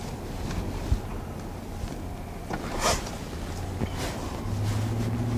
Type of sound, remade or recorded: recorded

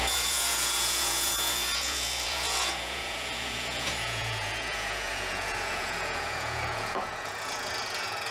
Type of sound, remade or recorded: remade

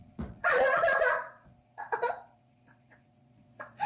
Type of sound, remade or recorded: remade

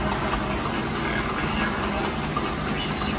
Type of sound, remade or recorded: recorded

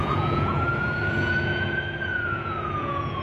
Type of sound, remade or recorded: remade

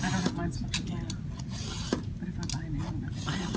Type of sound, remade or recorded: recorded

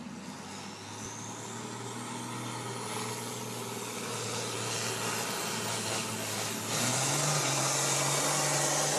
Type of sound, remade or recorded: recorded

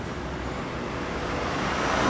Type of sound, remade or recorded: recorded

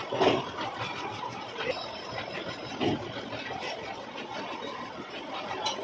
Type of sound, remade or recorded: recorded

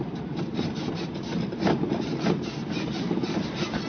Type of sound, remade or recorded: recorded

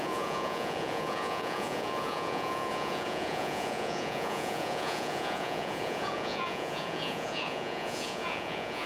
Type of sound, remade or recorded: remade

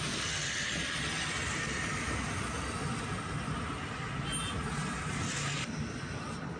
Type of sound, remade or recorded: recorded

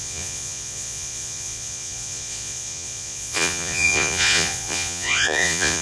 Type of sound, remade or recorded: remade